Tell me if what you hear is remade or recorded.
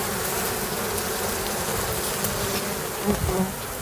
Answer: recorded